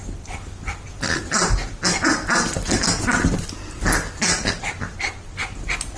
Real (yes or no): yes